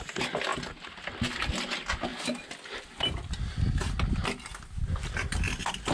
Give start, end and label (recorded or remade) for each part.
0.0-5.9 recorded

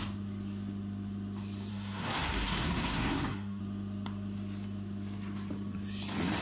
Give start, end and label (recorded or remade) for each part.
0.0-1.7 recorded; 1.7-3.6 remade; 3.6-6.4 recorded

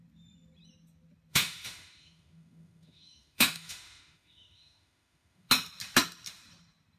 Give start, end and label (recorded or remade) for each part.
0.0-1.3 recorded; 1.3-5.5 remade; 5.5-7.0 recorded